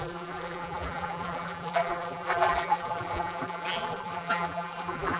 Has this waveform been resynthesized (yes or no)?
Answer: yes